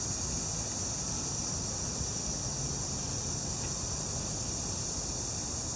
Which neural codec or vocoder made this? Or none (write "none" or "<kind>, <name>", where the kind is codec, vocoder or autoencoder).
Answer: none